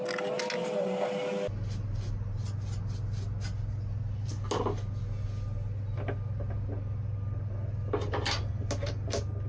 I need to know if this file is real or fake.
real